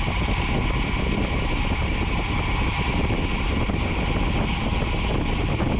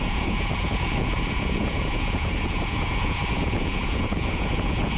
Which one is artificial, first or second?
second